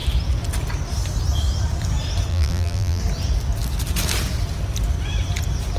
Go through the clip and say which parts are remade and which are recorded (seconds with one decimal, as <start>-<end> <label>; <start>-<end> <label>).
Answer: 0.0-2.3 recorded; 2.3-3.0 remade; 3.0-5.8 recorded